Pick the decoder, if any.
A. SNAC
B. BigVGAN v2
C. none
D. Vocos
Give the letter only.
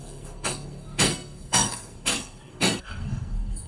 A